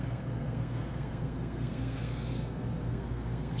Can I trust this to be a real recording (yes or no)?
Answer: no